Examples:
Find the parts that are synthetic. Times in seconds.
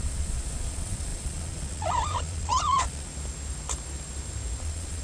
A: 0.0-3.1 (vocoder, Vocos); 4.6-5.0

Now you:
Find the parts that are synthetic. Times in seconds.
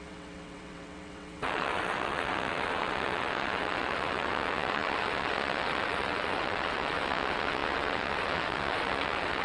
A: 0.0-9.4 (vocoder, WaveNeXt)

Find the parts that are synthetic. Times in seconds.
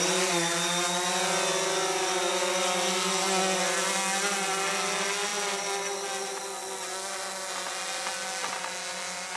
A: none